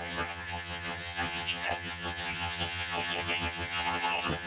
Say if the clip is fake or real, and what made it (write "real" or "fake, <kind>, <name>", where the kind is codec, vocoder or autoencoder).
fake, vocoder, HiFi-GAN